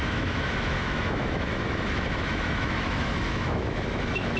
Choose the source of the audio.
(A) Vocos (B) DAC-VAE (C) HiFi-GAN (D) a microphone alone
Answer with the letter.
B